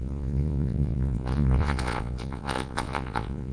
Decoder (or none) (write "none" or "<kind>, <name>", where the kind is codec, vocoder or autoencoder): vocoder, Vocos